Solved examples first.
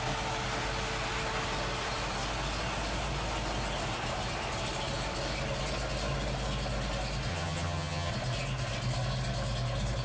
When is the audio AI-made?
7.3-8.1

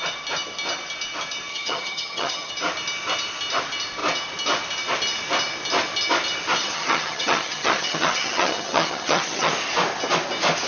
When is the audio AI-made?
1.5-2.5; 6.6-9.5

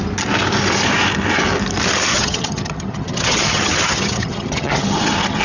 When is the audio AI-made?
2.1-5.4

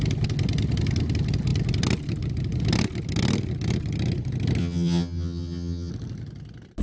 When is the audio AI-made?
4.6-5.9